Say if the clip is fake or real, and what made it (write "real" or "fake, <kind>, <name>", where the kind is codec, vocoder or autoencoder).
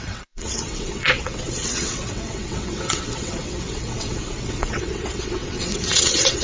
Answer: fake, vocoder, WaveNeXt